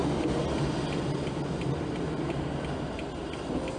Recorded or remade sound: recorded